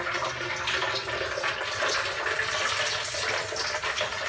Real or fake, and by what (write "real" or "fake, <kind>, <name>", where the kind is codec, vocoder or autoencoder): real